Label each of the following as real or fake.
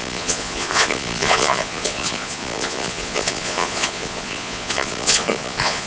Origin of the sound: fake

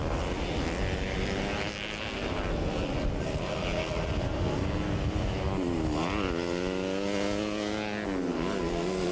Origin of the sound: real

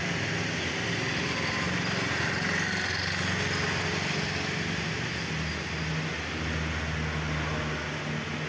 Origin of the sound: real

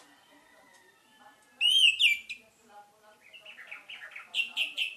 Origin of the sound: real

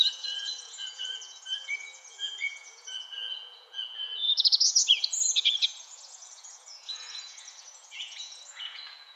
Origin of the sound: fake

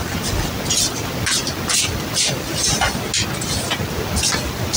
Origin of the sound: real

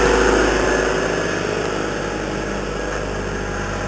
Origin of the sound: real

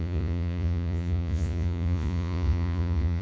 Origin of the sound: fake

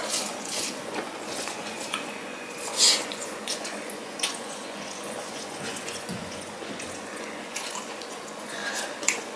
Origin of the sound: fake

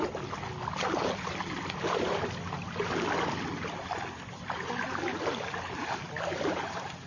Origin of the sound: real